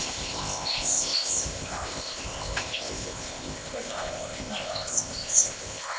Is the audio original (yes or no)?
no